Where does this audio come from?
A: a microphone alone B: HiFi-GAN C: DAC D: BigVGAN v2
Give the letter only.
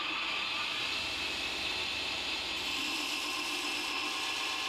A